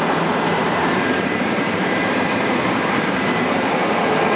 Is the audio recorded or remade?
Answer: remade